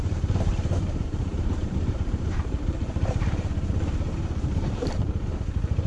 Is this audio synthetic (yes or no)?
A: yes